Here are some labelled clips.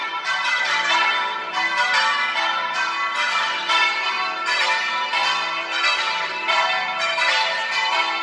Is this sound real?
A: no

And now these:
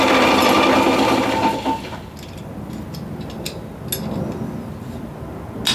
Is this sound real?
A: yes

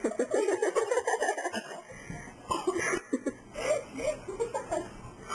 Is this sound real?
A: yes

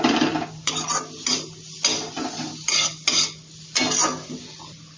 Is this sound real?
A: yes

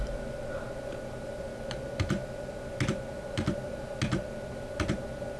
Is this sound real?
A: yes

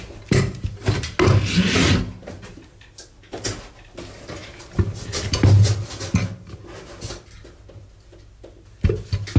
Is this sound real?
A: yes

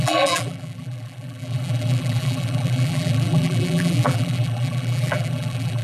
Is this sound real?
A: no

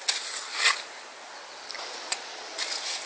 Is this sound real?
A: yes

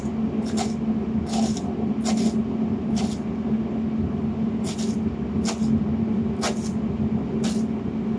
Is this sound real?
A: yes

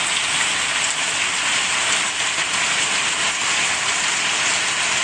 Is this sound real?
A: yes